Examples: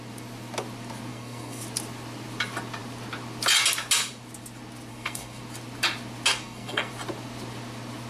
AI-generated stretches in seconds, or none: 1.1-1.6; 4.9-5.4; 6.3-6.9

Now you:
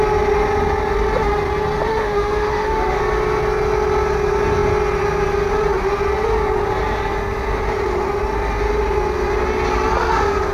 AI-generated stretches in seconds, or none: 1.9-3.0

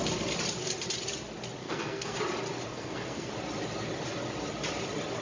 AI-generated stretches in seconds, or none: 1.6-2.2; 2.7-3.3

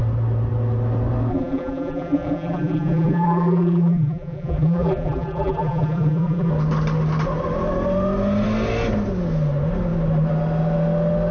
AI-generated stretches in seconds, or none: 1.3-6.5

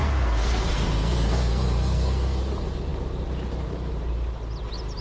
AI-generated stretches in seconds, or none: 0.0-2.4

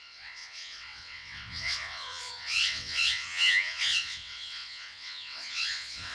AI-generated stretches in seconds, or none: 0.0-6.1

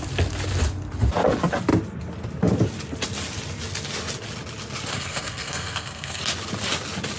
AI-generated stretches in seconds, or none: 4.9-6.2